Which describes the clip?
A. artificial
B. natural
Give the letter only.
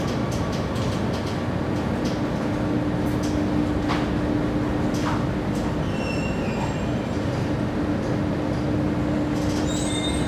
B